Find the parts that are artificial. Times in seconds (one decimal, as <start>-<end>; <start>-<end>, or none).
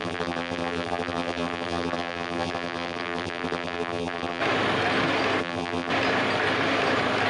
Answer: 0.0-4.4; 5.4-5.9